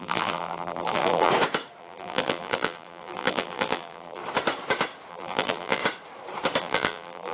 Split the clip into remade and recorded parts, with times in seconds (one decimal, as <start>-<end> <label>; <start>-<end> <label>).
0.0-1.3 remade; 1.3-1.8 recorded; 1.8-4.2 remade; 4.2-5.1 recorded; 5.1-5.8 remade; 5.8-6.6 recorded; 6.6-7.3 remade